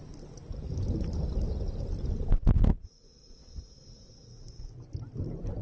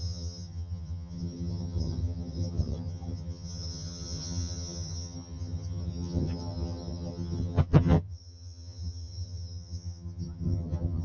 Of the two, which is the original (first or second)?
first